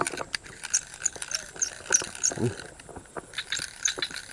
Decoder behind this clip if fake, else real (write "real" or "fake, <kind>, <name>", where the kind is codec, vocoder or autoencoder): real